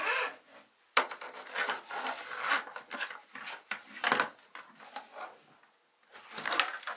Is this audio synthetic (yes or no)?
no